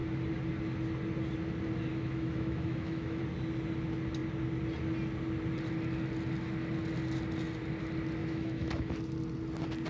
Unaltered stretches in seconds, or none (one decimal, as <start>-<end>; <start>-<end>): 0.0-1.9; 3.2-8.2; 8.9-9.9